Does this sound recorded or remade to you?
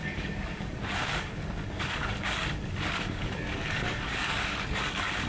remade